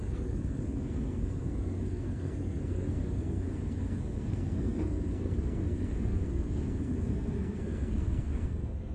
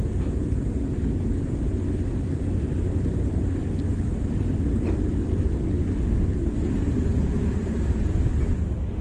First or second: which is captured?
second